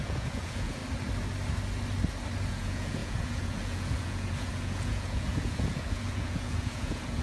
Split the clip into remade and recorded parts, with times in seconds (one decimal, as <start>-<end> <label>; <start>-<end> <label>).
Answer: 0.0-0.8 remade; 0.8-2.5 recorded; 2.5-7.2 remade